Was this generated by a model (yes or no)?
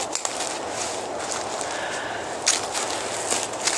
no